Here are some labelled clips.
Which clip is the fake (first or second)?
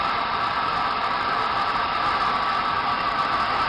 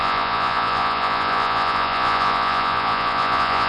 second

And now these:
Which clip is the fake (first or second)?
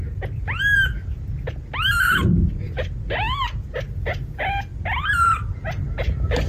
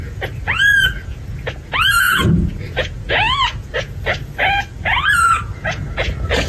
second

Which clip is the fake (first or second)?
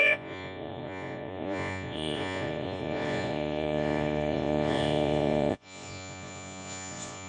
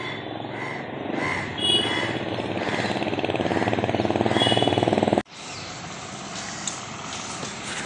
first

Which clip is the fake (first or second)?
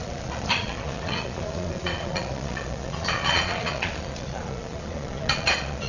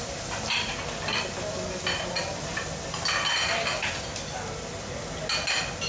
first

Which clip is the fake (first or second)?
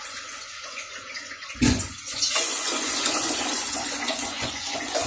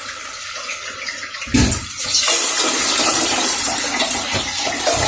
first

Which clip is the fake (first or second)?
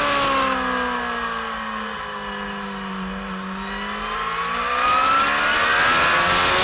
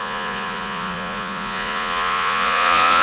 second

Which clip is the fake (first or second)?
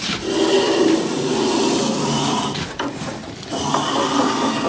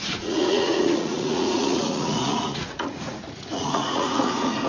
second